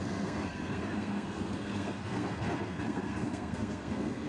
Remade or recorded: remade